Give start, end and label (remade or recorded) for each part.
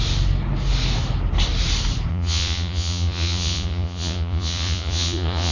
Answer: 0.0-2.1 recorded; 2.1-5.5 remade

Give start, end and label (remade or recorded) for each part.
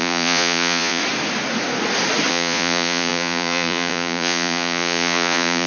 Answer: 0.0-1.0 remade; 1.0-2.3 recorded; 2.3-5.7 remade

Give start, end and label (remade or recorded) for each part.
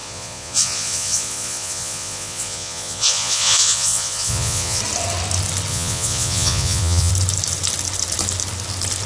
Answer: 0.0-4.8 remade; 4.8-5.7 recorded; 5.7-7.1 remade; 7.1-9.1 recorded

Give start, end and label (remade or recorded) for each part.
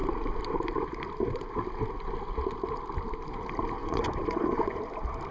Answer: 0.0-3.8 recorded; 3.8-4.8 remade; 4.8-5.3 recorded